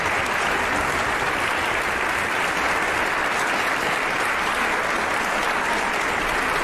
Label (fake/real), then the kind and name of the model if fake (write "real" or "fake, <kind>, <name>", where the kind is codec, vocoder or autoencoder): real